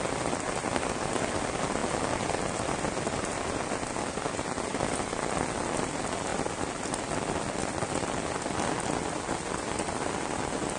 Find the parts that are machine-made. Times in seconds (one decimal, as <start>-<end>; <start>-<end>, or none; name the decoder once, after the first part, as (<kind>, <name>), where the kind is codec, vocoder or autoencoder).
none